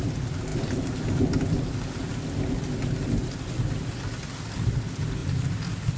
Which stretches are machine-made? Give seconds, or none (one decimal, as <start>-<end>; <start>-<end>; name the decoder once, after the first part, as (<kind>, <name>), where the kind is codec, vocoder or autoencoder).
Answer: none